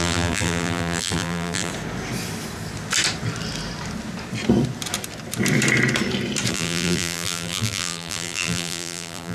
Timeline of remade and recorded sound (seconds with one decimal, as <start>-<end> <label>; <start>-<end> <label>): 0.0-1.7 remade; 1.7-6.5 recorded; 6.5-9.3 remade